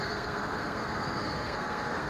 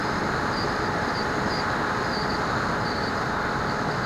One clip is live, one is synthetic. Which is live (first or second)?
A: second